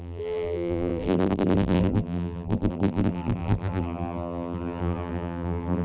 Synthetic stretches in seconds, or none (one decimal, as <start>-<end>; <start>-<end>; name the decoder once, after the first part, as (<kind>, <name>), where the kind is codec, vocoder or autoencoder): 0.0-5.8 (vocoder, BigVGAN v2)